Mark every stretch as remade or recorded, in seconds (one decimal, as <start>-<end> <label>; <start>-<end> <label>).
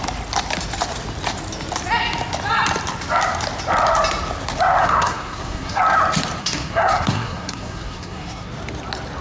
0.0-4.8 recorded; 4.8-5.8 remade; 5.8-6.4 recorded; 6.4-8.5 remade; 8.5-9.2 recorded